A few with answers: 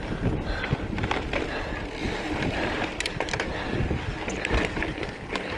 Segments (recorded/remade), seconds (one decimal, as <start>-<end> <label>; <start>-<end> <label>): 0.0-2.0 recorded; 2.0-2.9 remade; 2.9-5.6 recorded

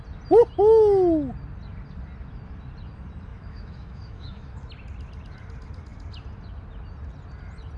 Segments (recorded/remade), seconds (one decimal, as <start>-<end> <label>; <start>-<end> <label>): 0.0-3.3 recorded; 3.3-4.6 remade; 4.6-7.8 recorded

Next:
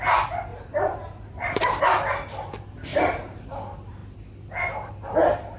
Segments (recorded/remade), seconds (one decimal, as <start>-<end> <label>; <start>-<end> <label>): 0.0-0.5 recorded; 0.5-1.8 remade; 1.8-2.9 recorded; 2.9-3.4 remade; 3.4-5.6 recorded

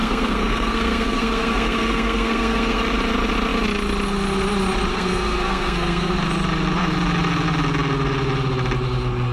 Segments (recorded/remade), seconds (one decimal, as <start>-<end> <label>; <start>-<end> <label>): 0.0-2.8 remade; 2.8-4.9 recorded; 4.9-6.1 remade; 6.1-9.3 recorded

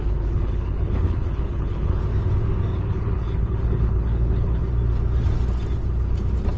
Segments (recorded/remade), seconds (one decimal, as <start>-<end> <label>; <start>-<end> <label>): 0.0-2.0 remade; 2.0-2.7 recorded; 2.7-4.7 remade; 4.7-6.6 recorded